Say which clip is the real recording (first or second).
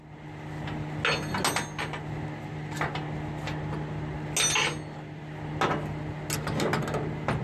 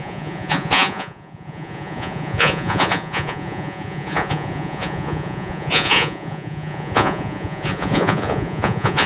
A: first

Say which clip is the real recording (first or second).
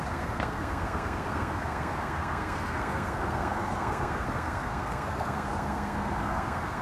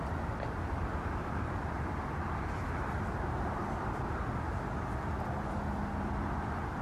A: second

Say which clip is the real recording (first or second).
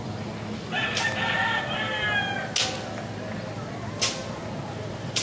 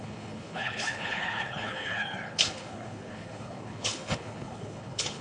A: first